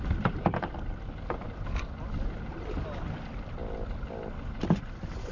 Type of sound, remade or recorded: recorded